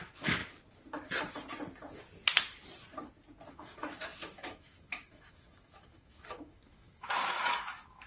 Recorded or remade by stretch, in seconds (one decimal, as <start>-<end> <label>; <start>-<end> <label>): 0.0-0.4 remade; 0.4-3.5 recorded; 3.5-8.1 remade